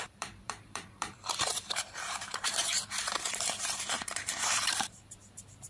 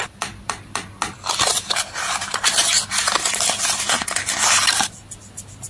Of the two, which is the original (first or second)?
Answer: second